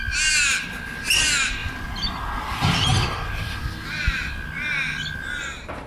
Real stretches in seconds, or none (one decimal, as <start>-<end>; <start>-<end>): 0.0-1.6; 3.6-5.9